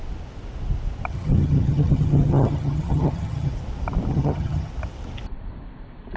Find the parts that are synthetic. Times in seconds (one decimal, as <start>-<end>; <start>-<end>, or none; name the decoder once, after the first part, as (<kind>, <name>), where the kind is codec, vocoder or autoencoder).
1.1-3.5 (vocoder, HiFi-GAN); 4.1-4.7